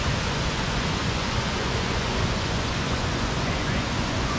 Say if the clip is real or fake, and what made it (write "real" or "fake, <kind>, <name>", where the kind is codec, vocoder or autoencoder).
fake, vocoder, Vocos